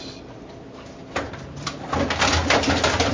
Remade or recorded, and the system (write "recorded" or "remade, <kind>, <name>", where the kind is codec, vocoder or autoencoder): recorded